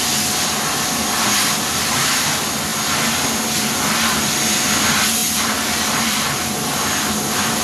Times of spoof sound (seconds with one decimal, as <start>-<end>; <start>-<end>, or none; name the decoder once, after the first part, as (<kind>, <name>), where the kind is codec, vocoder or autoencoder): 1.8-2.3 (vocoder, BigVGAN v2)